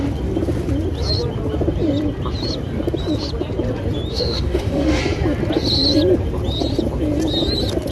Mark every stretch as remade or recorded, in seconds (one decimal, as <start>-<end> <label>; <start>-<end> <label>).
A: 0.0-4.1 recorded; 4.1-5.0 remade; 5.0-7.9 recorded

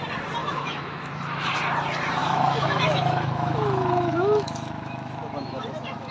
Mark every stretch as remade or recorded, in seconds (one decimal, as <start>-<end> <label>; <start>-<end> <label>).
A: 0.0-0.4 recorded; 0.4-1.5 remade; 1.5-2.2 recorded; 2.2-6.1 remade

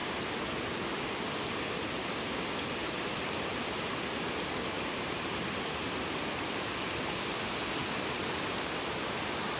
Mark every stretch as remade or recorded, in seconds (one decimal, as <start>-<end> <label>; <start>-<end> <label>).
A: 0.0-9.6 recorded

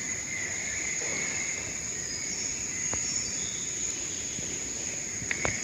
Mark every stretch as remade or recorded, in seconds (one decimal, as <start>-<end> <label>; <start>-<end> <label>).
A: 0.0-5.6 recorded

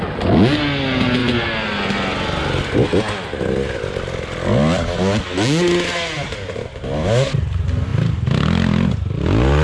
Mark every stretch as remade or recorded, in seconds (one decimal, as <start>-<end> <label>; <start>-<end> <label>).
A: 0.0-9.6 recorded

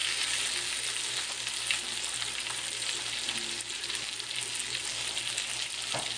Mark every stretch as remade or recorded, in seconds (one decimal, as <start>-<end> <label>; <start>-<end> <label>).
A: 0.0-6.2 recorded

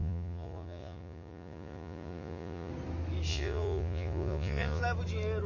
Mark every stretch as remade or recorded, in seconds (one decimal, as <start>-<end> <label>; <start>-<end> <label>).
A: 0.0-2.7 remade; 2.7-3.3 recorded; 3.3-4.8 remade; 4.8-5.5 recorded

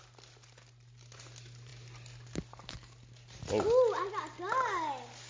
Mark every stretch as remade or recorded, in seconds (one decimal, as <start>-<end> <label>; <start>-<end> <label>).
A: 0.0-5.3 recorded